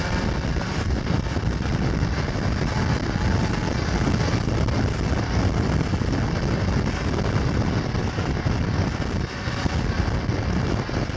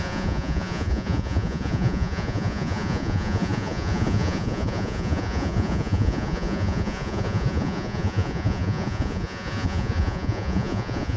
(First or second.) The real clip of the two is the first